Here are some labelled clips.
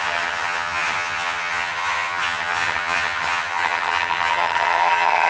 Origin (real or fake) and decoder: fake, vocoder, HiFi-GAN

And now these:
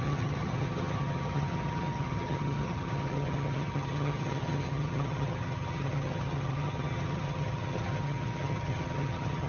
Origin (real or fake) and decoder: fake, vocoder, HiFi-GAN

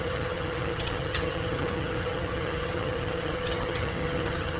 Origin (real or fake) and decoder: fake, vocoder, HiFi-GAN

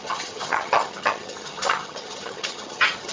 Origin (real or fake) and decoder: fake, vocoder, HiFi-GAN